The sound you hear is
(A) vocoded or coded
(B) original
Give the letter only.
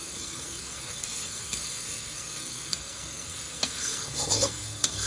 A